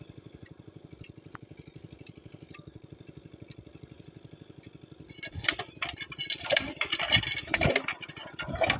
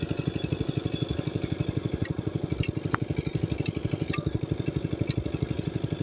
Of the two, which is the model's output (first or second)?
first